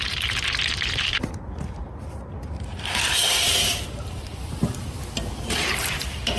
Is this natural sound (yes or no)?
no